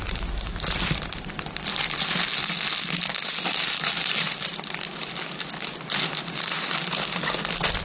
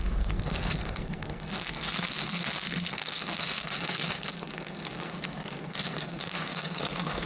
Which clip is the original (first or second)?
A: first